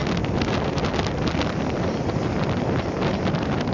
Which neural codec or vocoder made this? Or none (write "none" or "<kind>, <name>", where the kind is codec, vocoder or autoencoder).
none